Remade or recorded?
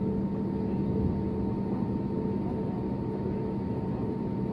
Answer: recorded